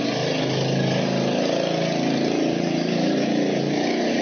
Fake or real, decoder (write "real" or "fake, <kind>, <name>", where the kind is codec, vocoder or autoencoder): real